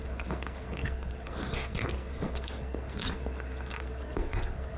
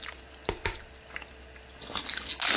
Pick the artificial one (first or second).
first